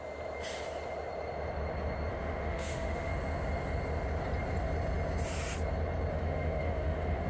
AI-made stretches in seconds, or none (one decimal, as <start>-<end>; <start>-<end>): 2.1-3.1; 6.1-7.3